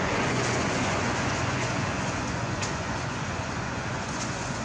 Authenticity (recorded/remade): remade